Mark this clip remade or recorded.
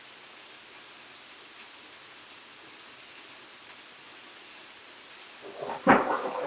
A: recorded